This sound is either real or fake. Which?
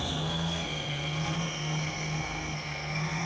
fake